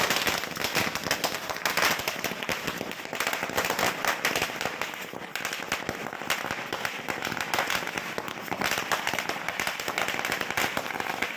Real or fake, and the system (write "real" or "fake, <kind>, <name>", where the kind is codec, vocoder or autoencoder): real